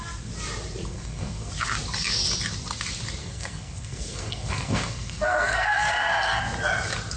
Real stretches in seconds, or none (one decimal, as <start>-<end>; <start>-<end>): 0.0-0.9; 1.5-3.2; 6.4-7.2